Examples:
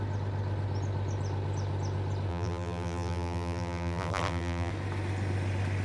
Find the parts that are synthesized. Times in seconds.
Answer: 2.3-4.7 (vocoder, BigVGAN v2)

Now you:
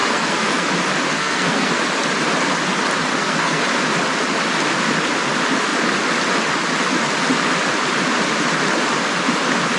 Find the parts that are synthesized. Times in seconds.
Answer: 0.0-0.7 (codec, SNAC); 1.1-1.8; 3.1-3.6